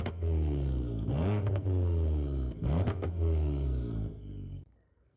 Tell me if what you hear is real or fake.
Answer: fake